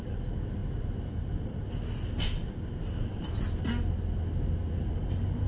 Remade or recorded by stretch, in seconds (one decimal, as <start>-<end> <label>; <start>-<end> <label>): 0.0-0.6 recorded; 0.6-1.3 remade; 1.3-5.5 recorded